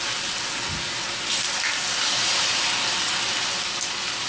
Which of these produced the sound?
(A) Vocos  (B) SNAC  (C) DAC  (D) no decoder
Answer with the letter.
D